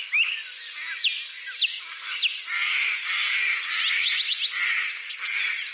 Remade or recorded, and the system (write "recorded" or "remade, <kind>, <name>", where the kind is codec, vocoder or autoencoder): recorded